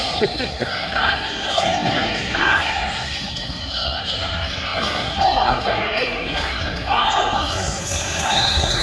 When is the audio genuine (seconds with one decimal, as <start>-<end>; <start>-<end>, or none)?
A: none